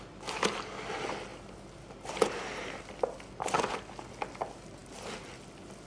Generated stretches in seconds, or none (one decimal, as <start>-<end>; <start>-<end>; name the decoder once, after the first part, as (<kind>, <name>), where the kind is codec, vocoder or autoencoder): none